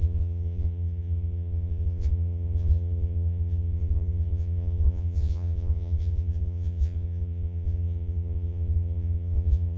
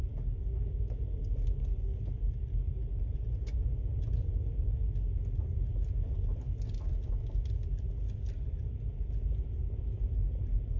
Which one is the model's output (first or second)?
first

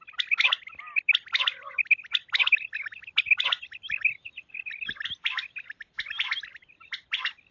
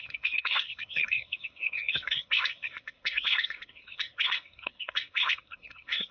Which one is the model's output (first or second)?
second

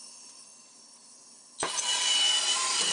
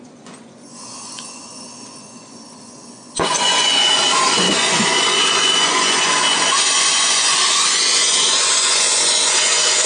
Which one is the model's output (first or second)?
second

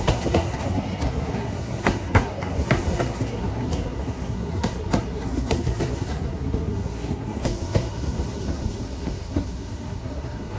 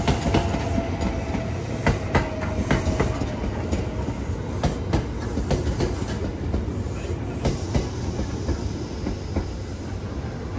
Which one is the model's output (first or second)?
first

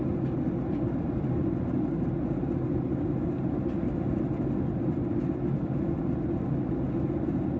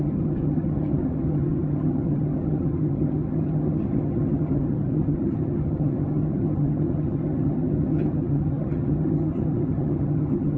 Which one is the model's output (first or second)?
second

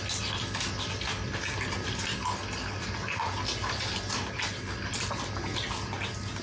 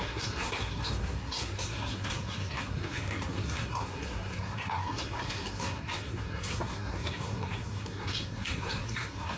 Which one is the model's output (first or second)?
second